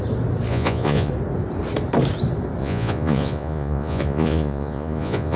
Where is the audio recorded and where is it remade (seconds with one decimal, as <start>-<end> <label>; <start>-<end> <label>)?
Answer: 0.0-0.5 recorded; 0.5-1.1 remade; 1.1-2.6 recorded; 2.6-5.4 remade